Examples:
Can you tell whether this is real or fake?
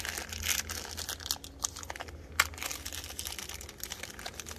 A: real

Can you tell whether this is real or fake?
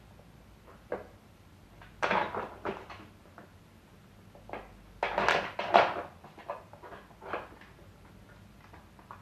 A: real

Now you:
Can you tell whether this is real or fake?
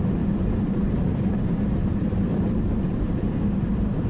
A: fake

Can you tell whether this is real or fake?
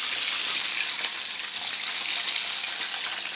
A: real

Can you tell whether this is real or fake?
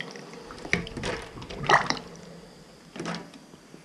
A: real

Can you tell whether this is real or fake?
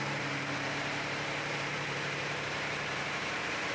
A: fake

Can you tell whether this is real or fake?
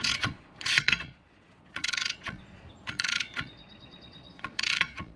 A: fake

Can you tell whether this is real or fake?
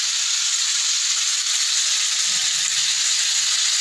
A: real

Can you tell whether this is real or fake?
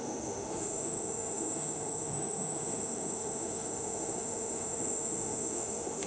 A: fake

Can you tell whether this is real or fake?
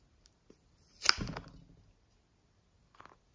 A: real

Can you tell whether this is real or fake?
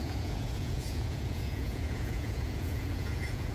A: fake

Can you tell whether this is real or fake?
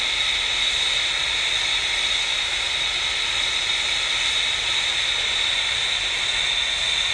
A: real